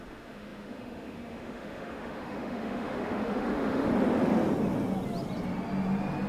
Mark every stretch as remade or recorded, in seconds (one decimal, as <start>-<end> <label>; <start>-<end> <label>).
0.0-3.9 remade; 3.9-6.3 recorded